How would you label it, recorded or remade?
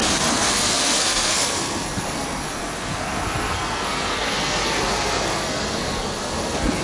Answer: remade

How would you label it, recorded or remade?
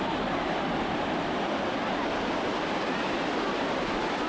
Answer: recorded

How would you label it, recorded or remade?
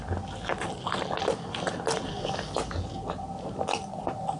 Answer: recorded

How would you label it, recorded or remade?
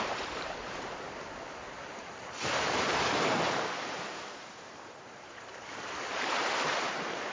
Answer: remade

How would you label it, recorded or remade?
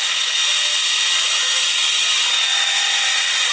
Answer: recorded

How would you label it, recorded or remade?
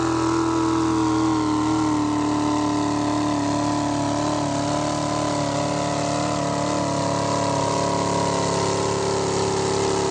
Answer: recorded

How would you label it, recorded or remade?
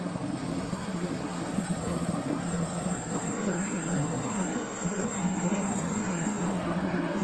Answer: remade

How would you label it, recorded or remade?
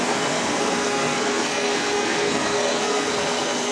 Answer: remade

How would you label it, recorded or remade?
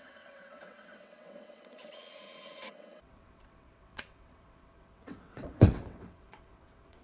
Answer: remade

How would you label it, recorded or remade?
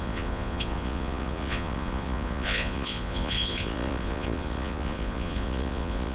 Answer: remade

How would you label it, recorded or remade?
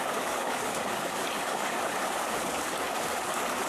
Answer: remade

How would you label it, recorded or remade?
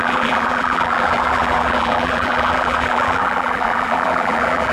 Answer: remade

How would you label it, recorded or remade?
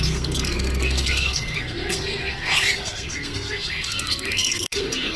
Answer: remade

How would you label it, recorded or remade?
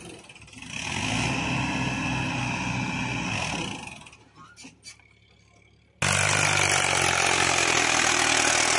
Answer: recorded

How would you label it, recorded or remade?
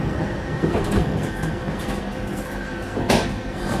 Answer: remade